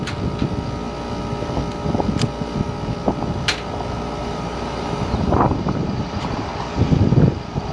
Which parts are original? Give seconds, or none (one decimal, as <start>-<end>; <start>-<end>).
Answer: 0.0-4.2; 6.5-7.7

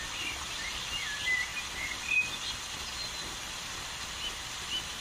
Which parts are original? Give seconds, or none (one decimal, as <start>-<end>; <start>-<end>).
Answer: 0.0-5.0

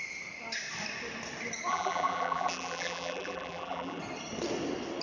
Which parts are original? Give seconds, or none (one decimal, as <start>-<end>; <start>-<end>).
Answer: 0.0-1.7; 4.0-5.0

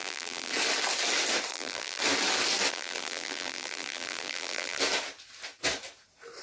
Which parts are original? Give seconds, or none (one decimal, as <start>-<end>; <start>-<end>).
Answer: 0.5-1.5; 2.0-2.7; 4.8-6.4

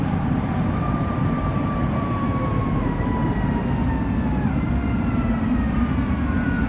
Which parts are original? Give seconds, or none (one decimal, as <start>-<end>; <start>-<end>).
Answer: 2.5-6.7

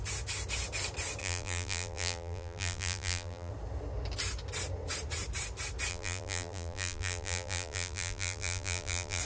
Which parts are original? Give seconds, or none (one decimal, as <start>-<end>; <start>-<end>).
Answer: 0.0-1.2; 3.5-5.9

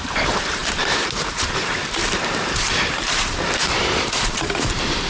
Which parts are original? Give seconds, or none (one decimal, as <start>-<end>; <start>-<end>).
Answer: none